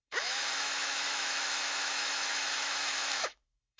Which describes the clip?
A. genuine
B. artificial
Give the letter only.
B